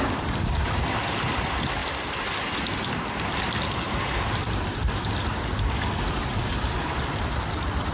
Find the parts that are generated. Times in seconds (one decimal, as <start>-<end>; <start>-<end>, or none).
none

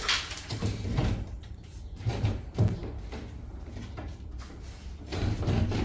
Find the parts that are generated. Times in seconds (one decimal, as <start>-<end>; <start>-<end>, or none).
0.0-2.8; 3.5-5.8